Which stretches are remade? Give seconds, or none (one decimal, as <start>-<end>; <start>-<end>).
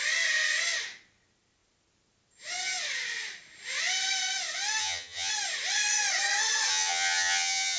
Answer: 4.8-5.3; 6.7-7.8